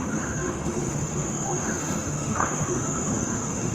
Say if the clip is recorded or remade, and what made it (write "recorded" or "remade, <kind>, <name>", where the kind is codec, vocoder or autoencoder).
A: remade, autoencoder, DAC-VAE